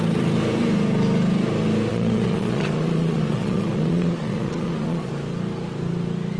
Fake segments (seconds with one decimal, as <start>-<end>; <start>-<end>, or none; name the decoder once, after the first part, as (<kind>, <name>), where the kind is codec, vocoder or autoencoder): 1.9-5.1 (vocoder, Vocos)